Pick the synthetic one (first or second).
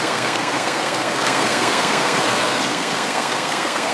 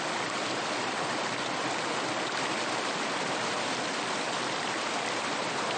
first